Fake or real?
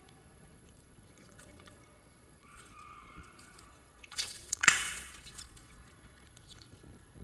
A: fake